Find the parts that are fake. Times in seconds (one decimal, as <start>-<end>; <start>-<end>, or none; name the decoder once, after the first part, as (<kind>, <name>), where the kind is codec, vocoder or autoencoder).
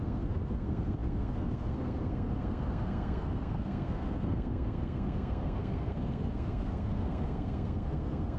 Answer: 0.0-8.4 (codec, SNAC)